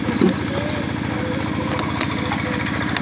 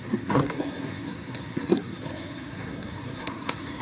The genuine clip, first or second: first